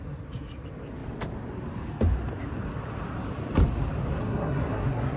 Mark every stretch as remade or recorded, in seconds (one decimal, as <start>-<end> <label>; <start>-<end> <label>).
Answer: 0.0-4.2 recorded; 4.2-5.2 remade